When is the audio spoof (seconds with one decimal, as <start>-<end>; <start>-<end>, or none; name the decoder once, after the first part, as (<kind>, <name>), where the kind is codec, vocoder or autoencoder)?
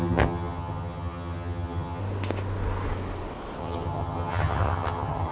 0.0-2.0 (vocoder, HiFi-GAN); 3.6-5.3